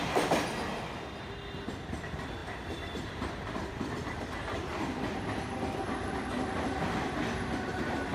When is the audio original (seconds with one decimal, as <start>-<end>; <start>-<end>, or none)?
0.0-2.4; 4.9-8.1